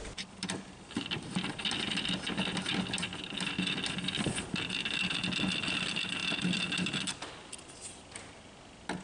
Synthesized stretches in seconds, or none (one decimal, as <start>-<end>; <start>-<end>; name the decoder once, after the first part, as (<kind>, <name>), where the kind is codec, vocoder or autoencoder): none